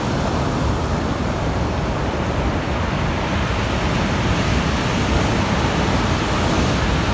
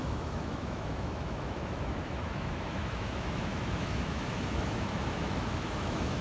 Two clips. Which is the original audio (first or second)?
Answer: first